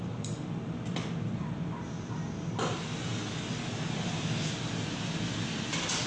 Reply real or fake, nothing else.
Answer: real